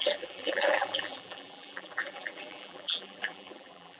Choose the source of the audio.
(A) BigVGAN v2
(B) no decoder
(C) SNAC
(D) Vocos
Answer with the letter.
A